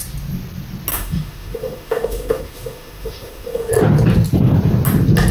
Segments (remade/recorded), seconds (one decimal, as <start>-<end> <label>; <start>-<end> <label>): 0.0-0.9 recorded; 0.9-3.7 remade; 3.7-5.3 recorded